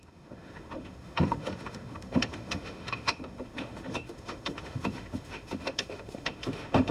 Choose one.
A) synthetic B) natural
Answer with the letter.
A